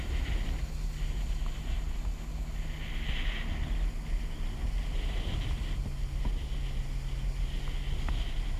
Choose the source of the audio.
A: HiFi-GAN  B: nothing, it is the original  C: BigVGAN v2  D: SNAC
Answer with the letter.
B